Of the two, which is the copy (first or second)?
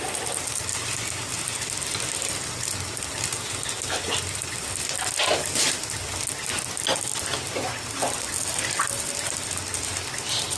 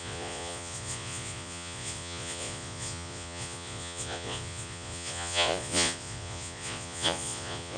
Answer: second